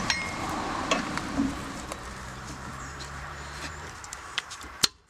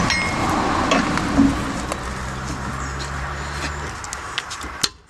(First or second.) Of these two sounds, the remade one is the first